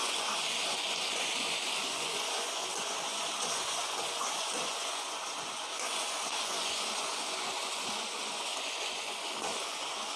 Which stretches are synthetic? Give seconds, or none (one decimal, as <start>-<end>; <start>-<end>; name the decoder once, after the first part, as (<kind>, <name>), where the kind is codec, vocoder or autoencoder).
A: 0.0-10.2 (vocoder, Vocos)